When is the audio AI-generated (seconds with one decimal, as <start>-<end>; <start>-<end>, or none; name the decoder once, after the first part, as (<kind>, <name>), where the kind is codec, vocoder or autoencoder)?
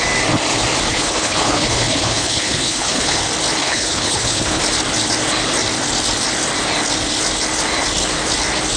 0.9-3.2 (codec, HILCodec); 3.6-4.6